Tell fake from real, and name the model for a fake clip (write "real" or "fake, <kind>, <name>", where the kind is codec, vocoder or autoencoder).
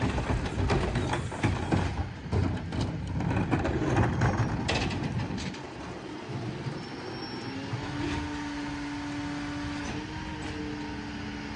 real